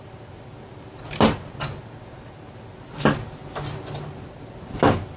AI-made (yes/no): no